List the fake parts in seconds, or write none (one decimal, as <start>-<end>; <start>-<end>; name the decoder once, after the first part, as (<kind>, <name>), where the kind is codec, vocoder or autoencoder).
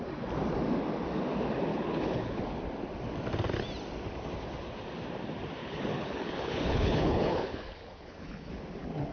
1.7-2.4 (codec, HILCodec); 5.6-8.5